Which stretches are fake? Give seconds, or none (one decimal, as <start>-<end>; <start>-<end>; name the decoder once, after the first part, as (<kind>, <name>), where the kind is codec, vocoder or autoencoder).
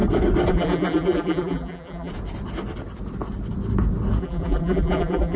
0.5-2.1 (vocoder, BigVGAN v2); 4.2-5.4